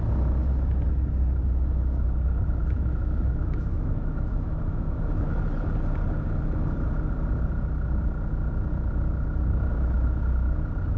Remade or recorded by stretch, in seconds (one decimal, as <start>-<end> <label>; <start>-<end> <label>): 0.0-2.6 recorded; 2.6-5.4 remade; 5.4-9.7 recorded; 9.7-10.2 remade; 10.2-11.0 recorded